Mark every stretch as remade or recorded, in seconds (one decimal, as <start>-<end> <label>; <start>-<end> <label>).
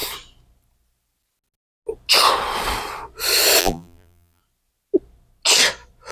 0.0-3.6 recorded; 3.6-4.4 remade; 4.4-6.1 recorded